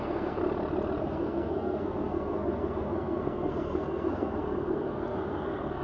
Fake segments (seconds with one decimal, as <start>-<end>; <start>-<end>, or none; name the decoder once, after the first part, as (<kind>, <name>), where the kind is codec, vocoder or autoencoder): 0.0-0.4 (codec, SNAC); 1.0-5.8